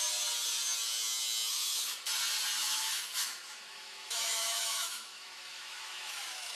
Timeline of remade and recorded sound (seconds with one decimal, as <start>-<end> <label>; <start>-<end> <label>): 0.0-1.5 recorded; 1.5-2.1 remade; 2.1-2.6 recorded; 2.6-6.6 remade